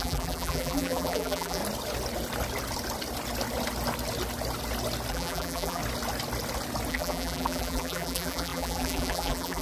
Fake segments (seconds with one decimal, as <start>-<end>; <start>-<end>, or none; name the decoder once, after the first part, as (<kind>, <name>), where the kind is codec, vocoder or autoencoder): 0.0-1.6 (vocoder, BigVGAN v2); 5.1-5.8; 6.9-9.6